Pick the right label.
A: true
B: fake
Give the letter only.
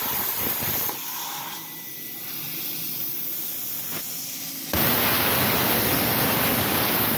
A